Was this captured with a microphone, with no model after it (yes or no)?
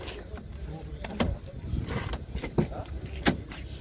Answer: yes